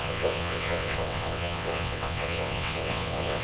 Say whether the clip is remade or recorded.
remade